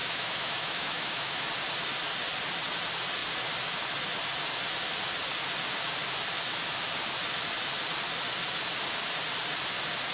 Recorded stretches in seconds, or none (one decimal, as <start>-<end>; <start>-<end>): 1.5-10.1